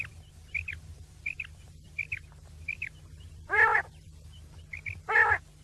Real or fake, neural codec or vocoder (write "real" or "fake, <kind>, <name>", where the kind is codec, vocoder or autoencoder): fake, vocoder, BigVGAN v2